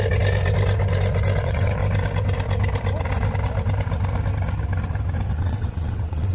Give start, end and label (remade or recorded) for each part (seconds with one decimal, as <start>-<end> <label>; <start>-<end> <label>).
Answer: 0.0-1.4 recorded; 1.4-1.8 remade; 1.8-5.3 recorded; 5.3-6.3 remade